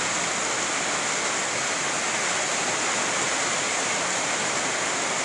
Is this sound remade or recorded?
recorded